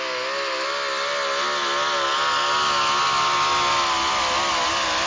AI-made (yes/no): no